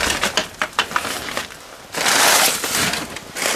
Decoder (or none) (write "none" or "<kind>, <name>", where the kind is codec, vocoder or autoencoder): none